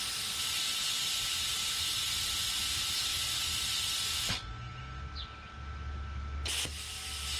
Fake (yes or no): no